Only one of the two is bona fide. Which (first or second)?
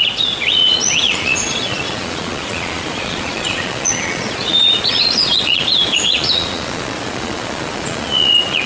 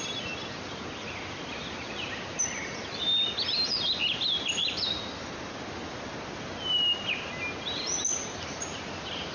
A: second